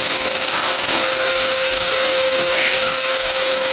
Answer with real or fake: fake